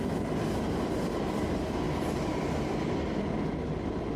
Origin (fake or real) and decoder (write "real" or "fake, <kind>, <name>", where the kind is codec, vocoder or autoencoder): real